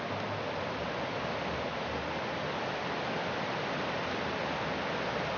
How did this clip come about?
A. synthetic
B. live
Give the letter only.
B